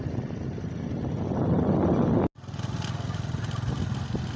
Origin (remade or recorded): recorded